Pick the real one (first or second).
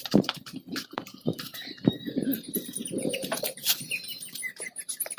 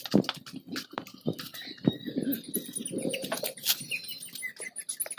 second